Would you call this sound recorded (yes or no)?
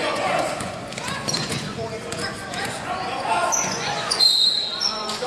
no